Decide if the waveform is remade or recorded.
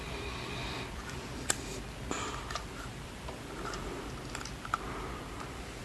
recorded